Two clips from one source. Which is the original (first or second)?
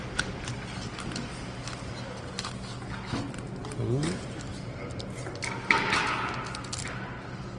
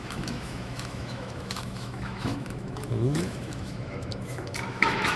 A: first